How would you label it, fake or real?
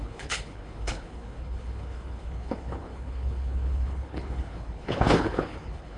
fake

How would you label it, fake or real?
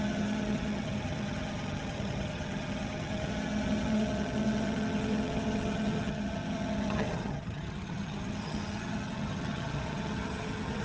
fake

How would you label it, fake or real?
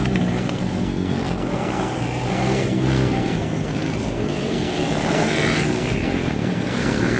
fake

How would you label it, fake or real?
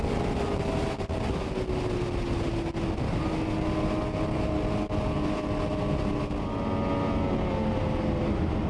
real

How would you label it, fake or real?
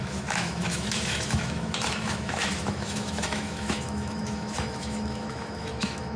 fake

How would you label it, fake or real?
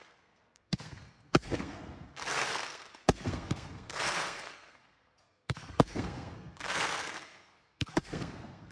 fake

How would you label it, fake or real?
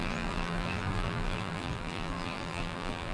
fake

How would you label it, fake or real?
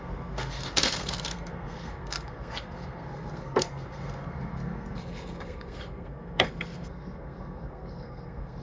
fake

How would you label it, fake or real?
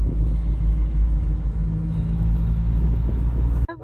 fake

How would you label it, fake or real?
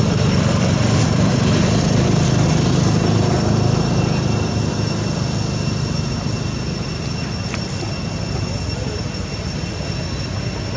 real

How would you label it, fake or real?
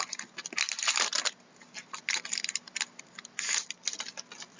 real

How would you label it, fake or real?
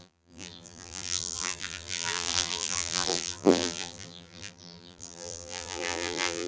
fake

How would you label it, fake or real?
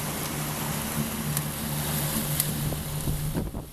real